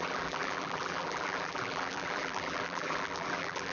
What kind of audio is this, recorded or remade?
remade